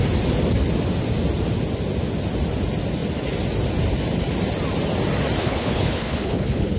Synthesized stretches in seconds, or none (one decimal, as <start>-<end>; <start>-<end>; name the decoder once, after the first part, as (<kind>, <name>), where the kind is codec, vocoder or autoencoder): 5.4-6.8 (codec, HILCodec)